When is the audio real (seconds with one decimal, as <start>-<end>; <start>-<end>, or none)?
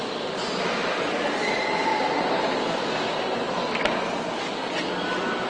0.0-5.5